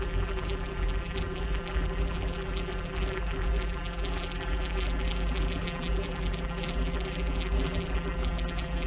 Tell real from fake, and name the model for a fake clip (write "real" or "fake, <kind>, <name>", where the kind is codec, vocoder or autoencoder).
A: fake, vocoder, BigVGAN v2